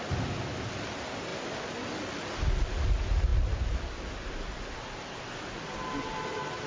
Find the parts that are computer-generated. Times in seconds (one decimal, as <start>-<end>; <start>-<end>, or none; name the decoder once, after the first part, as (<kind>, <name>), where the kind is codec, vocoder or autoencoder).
none